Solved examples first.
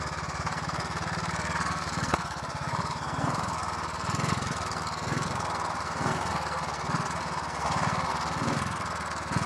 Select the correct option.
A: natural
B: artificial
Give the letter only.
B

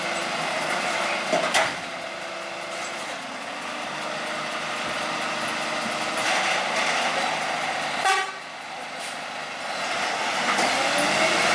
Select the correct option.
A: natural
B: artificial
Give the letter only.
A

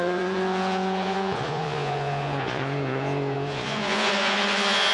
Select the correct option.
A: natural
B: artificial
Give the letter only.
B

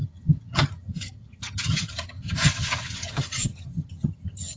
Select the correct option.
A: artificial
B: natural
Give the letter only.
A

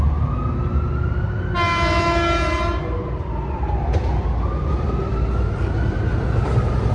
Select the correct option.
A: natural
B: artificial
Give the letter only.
A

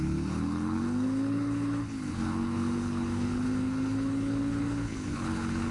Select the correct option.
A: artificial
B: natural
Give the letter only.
A